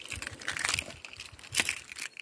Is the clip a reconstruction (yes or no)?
yes